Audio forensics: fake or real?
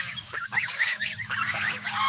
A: fake